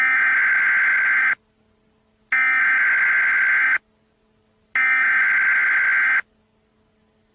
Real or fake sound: real